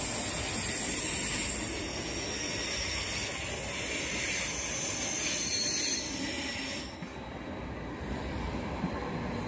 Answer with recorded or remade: recorded